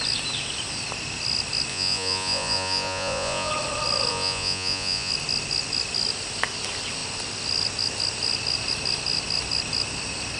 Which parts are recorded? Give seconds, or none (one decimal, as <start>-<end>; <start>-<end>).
0.0-1.7; 3.5-4.1; 5.1-10.4